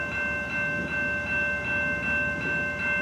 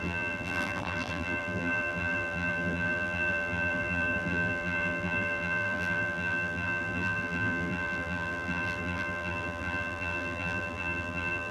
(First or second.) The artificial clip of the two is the second